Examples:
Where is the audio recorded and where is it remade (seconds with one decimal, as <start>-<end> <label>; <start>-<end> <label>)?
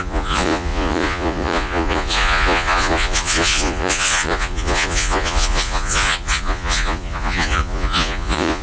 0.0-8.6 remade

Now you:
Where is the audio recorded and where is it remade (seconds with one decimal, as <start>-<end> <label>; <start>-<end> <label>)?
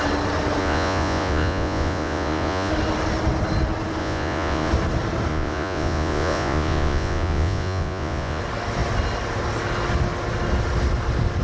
0.0-0.6 recorded; 0.6-2.7 remade; 2.7-4.0 recorded; 4.0-4.7 remade; 4.7-5.3 recorded; 5.3-8.4 remade; 8.4-11.4 recorded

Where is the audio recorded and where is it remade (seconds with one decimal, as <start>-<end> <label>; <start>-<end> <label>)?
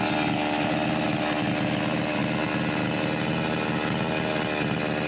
0.0-5.1 recorded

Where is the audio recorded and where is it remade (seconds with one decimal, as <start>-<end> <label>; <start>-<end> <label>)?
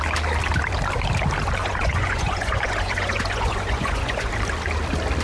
0.0-1.6 recorded; 1.6-4.3 remade; 4.3-5.2 recorded